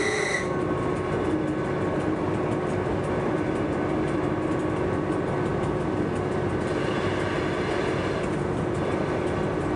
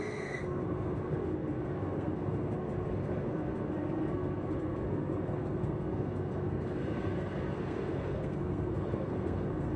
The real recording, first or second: first